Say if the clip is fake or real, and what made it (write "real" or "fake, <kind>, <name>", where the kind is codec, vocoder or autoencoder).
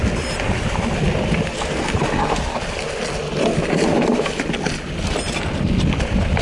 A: real